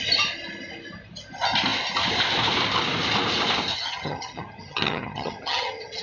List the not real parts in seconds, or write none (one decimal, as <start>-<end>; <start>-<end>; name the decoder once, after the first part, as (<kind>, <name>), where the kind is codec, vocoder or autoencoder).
3.7-6.0 (vocoder, HiFi-GAN)